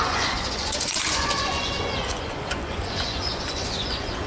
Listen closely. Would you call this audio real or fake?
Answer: fake